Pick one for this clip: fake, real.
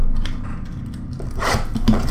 real